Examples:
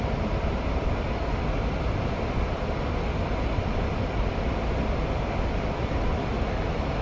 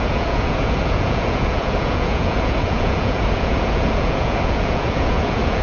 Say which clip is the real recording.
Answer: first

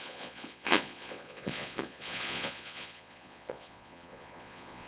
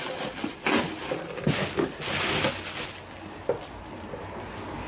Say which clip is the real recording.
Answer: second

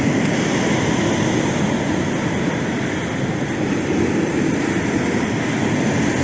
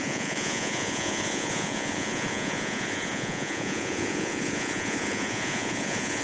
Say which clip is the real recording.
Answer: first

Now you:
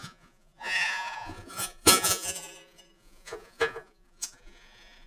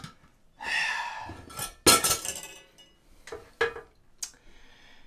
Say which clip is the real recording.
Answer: second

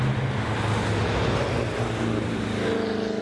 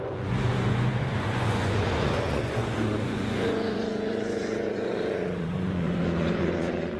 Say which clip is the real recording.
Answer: first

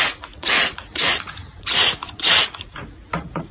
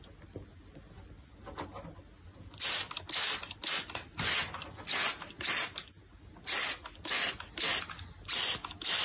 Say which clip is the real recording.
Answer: second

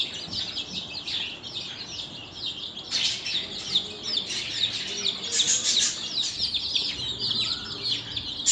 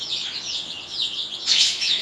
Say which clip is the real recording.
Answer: first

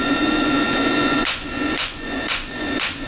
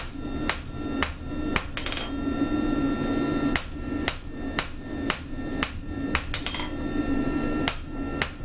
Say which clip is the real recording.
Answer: second